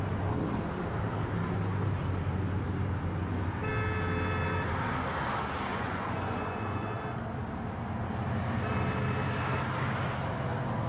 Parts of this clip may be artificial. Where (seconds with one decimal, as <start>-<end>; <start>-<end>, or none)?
5.7-7.0

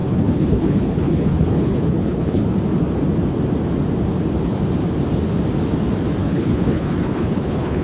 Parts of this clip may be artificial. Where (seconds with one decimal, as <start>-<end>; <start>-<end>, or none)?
0.0-2.4; 6.2-7.8

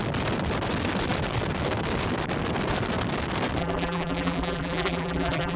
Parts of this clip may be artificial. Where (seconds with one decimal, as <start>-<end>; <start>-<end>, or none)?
3.6-5.6

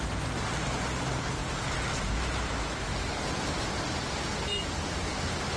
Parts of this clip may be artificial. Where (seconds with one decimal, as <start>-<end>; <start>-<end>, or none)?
none

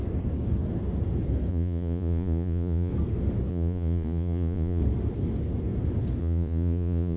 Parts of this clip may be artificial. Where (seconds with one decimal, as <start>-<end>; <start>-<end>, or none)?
1.5-2.9; 3.5-4.8; 6.2-7.2

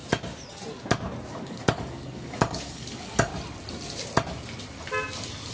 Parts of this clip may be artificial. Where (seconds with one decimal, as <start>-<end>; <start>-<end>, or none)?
1.3-3.3

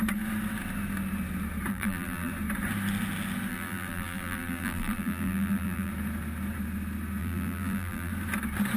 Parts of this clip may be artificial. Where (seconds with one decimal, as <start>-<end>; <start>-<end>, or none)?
1.7-2.3; 3.5-5.9; 7.2-8.1

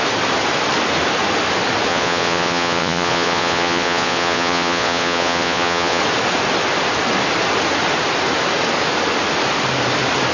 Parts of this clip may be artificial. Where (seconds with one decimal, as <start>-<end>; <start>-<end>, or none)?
1.9-6.0